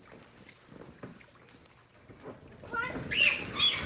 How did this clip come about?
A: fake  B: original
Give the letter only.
B